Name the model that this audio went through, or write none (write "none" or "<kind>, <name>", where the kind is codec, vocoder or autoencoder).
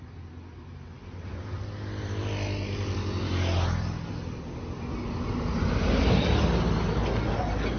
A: none